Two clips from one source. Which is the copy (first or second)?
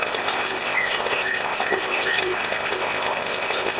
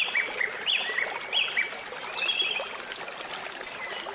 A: first